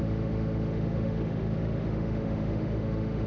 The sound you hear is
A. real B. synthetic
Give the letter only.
B